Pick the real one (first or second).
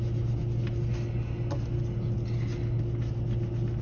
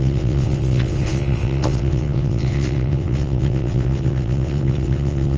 first